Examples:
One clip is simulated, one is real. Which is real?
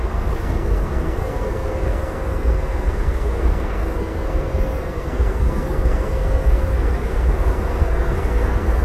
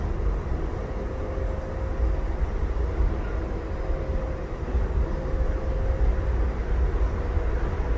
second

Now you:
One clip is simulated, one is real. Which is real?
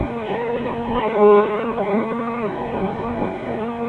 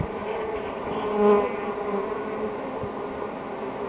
second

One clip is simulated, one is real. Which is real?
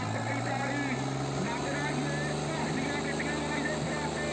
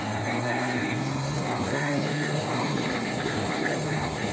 first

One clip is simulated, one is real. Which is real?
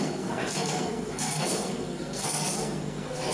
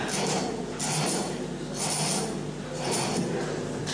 second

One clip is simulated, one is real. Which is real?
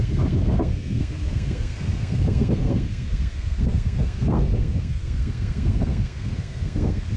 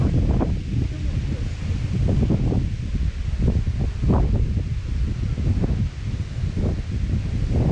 second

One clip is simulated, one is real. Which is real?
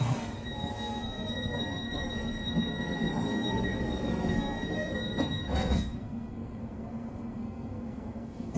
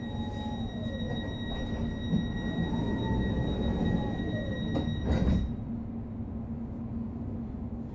second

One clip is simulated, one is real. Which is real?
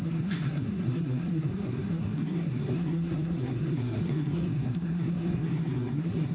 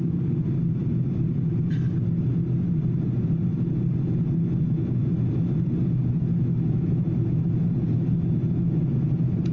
second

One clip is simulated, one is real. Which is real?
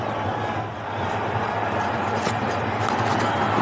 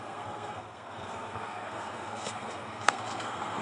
first